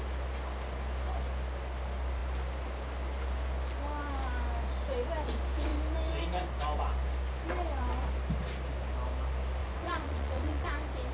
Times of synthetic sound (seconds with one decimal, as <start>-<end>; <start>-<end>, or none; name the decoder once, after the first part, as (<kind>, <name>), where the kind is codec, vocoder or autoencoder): 9.6-10.7 (vocoder, Vocos)